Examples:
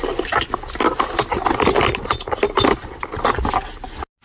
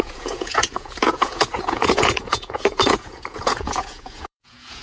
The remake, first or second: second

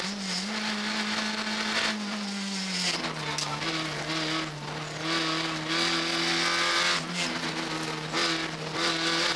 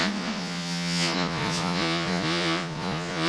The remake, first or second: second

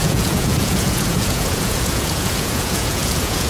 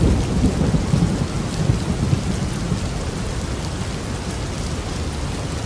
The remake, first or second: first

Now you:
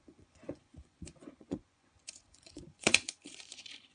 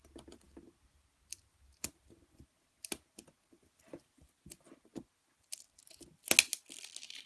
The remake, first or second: first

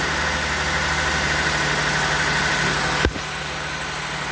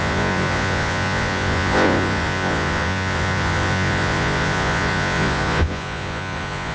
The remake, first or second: second